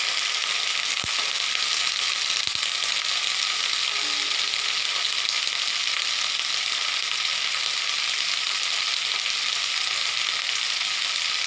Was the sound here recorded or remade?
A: recorded